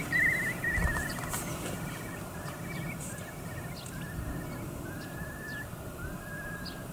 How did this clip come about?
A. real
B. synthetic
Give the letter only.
A